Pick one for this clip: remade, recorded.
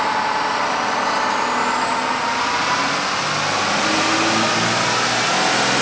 recorded